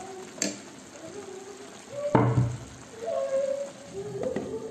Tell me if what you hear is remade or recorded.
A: recorded